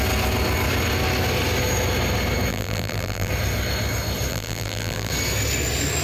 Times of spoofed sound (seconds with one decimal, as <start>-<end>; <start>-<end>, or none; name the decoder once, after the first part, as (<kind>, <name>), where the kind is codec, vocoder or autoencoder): 2.5-3.3 (vocoder, BigVGAN v2); 4.3-5.1